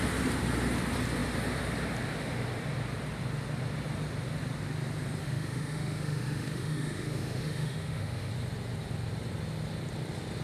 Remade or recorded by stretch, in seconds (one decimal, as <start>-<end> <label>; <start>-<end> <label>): 0.0-5.2 recorded; 5.2-8.3 remade; 8.3-10.4 recorded